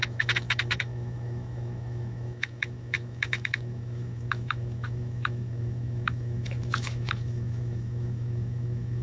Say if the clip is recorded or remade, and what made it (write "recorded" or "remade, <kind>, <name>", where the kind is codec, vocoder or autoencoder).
remade, autoencoder, DAC-VAE